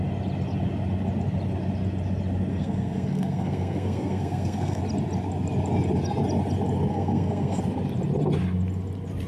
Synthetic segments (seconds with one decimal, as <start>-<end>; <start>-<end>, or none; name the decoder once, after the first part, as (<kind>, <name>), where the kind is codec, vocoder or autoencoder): 2.5-4.8 (codec, SNAC); 6.9-7.6